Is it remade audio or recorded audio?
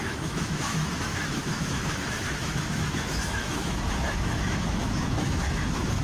remade